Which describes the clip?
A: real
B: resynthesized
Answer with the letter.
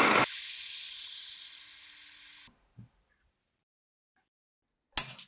A